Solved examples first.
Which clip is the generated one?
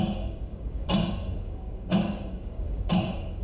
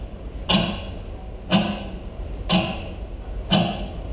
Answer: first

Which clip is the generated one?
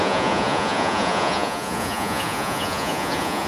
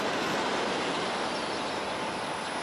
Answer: first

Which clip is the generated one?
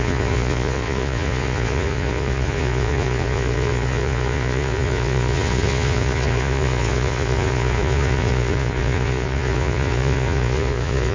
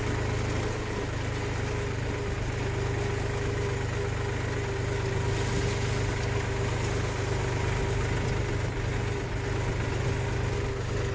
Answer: first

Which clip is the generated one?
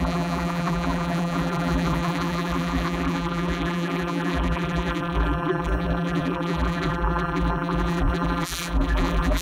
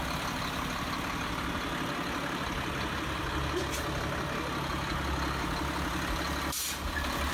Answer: first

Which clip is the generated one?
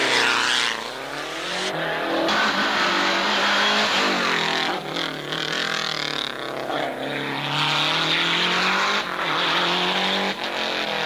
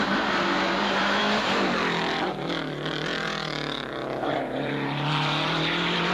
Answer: second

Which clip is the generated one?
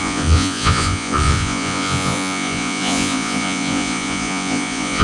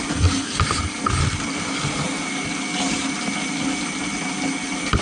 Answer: first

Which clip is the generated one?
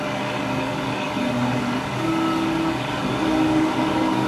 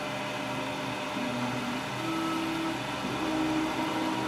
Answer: first